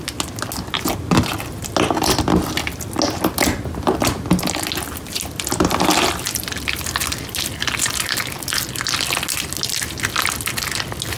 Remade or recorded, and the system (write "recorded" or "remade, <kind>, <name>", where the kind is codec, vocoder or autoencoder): recorded